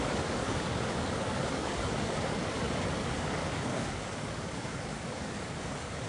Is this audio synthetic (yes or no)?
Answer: yes